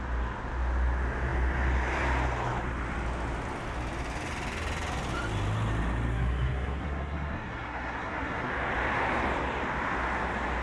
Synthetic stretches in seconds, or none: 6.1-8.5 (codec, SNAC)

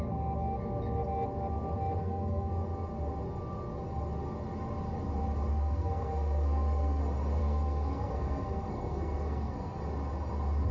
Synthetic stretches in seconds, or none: 2.0-2.5 (codec, SNAC); 5.5-7.0; 7.4-9.8

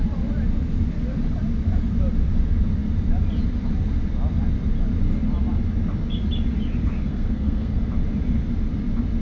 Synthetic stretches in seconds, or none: 7.0-7.8 (codec, SNAC)